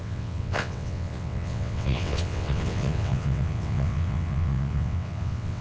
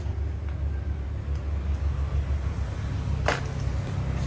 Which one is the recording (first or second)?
second